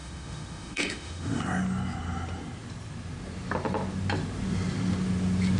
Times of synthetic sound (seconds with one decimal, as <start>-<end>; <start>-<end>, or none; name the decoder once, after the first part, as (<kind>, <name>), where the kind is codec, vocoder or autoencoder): 0.0-1.4 (autoencoder, DAC-VAE)